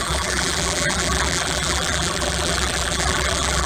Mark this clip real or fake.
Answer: fake